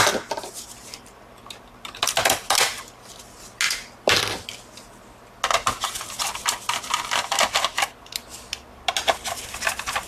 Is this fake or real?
real